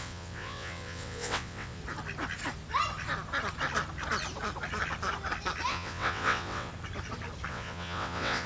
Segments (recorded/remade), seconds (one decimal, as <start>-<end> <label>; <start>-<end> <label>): 0.0-1.8 remade; 1.8-5.7 recorded; 5.7-6.7 remade; 6.7-7.5 recorded; 7.5-8.5 remade